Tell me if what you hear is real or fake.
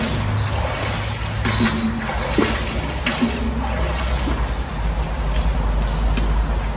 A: real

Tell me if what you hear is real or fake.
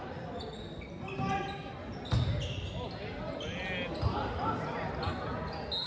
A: real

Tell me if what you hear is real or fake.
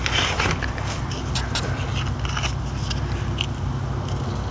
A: real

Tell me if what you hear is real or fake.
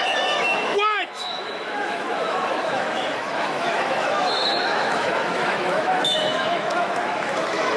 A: fake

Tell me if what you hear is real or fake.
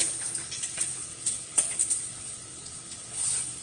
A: fake